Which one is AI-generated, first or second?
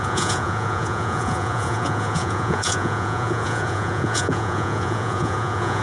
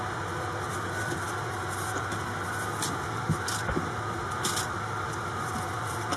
first